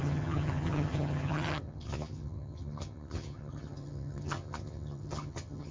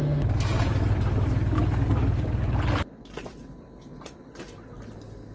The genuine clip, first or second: second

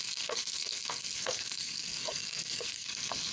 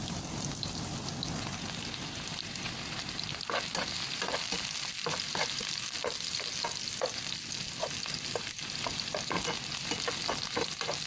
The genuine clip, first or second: second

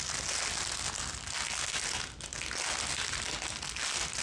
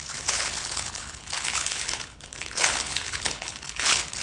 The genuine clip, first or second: first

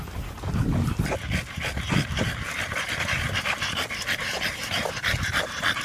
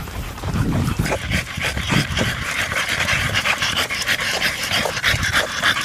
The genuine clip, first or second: first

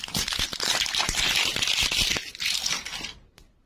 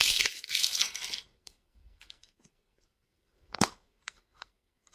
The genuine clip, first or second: first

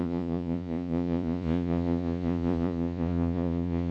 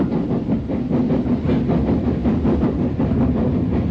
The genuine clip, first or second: second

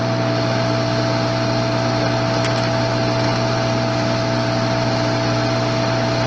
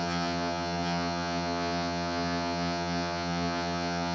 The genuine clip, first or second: first